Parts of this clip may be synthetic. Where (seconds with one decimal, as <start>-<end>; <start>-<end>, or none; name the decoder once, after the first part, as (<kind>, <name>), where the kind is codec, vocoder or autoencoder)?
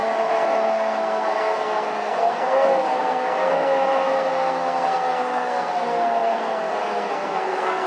0.0-7.9 (codec, SNAC)